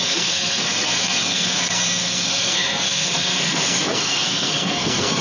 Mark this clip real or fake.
fake